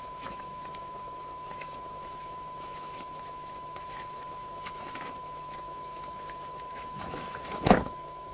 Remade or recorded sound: remade